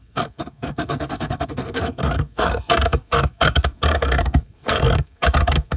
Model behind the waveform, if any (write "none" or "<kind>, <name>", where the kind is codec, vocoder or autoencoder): codec, SNAC